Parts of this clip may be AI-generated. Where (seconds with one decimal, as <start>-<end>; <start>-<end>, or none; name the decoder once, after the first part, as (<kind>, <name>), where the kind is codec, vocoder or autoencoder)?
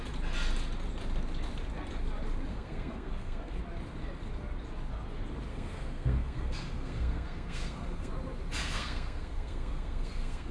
2.5-3.6 (codec, SNAC); 5.5-8.1; 8.6-10.5